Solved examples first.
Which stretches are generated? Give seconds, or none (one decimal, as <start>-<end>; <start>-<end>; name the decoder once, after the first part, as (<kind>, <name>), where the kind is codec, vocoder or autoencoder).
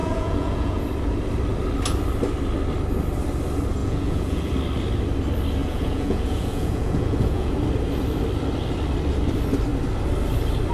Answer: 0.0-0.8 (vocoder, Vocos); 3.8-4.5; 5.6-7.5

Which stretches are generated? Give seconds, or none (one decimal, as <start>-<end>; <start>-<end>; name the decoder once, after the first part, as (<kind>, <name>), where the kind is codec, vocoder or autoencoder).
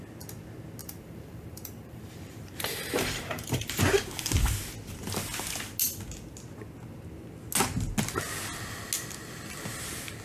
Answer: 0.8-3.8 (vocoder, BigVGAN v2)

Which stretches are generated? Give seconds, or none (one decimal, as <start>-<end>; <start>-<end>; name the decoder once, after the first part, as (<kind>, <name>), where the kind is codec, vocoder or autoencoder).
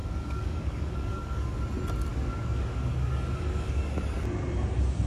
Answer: 0.0-1.6 (codec, DAC); 2.1-3.9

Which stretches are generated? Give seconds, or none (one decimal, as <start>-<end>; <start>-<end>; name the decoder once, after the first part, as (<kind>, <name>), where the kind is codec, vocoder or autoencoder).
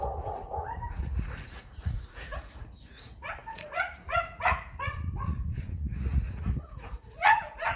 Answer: 0.0-7.8 (vocoder, Vocos)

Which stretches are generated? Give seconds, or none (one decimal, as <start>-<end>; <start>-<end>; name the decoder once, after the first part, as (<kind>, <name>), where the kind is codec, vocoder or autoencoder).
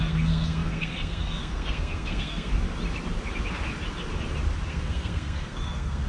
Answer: 0.0-2.5 (codec, SNAC); 4.7-6.1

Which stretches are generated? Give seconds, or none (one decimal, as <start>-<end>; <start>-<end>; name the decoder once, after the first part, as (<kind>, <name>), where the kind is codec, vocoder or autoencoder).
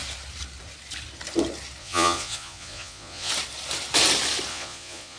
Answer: 1.8-3.3 (vocoder, Vocos); 4.5-5.2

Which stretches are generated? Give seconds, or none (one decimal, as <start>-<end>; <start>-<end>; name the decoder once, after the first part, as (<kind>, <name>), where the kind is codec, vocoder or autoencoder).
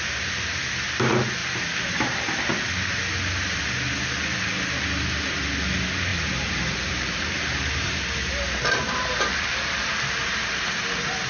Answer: 1.4-2.7 (vocoder, BigVGAN v2); 6.1-10.6